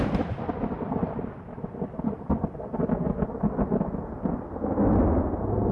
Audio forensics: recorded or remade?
recorded